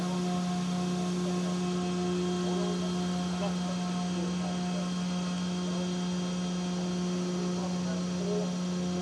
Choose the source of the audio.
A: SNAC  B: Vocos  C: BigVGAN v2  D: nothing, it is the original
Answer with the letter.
D